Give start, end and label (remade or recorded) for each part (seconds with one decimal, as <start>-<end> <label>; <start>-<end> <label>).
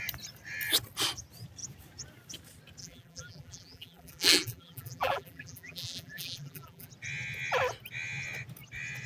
0.0-2.8 recorded; 2.8-6.9 remade; 6.9-9.1 recorded